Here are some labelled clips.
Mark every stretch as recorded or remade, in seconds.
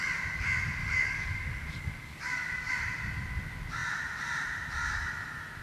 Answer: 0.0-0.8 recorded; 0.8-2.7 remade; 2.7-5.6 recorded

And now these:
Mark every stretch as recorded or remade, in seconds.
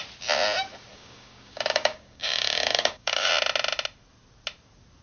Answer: 0.0-0.9 recorded; 0.9-3.3 remade; 3.3-5.0 recorded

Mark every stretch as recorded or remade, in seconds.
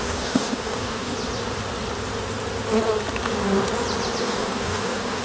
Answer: 0.0-1.1 remade; 1.1-4.2 recorded; 4.2-5.2 remade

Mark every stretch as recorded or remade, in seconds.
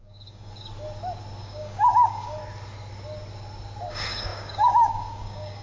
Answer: 0.0-0.7 remade; 0.7-1.4 recorded; 1.4-2.4 remade; 2.4-3.9 recorded; 3.9-5.6 remade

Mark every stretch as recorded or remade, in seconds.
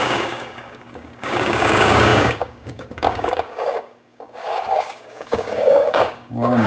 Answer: 0.0-6.7 remade